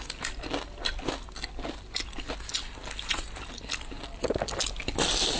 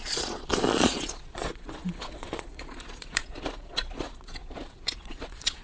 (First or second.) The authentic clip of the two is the first